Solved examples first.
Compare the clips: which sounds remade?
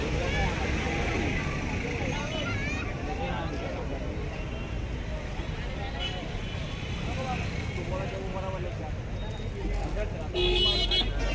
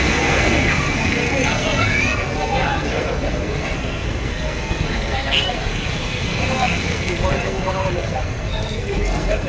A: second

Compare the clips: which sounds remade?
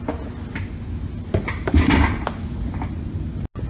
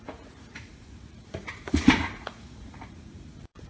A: second